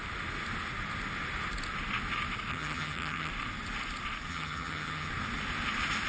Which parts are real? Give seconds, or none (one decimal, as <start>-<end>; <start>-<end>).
0.0-2.5; 3.3-4.3; 5.1-6.1